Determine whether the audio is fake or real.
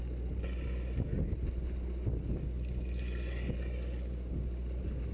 real